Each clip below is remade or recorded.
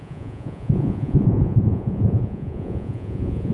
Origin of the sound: remade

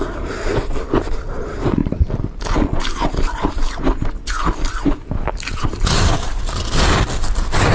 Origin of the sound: recorded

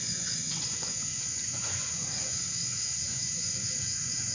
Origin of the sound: remade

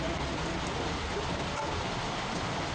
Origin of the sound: recorded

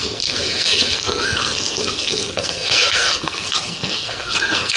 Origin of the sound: remade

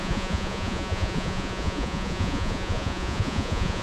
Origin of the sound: remade